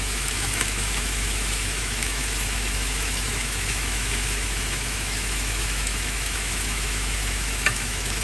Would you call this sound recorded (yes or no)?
no